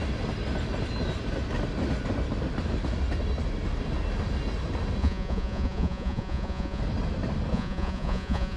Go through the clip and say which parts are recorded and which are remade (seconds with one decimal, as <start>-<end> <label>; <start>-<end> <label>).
0.0-5.0 recorded; 5.0-6.8 remade; 6.8-7.5 recorded; 7.5-8.6 remade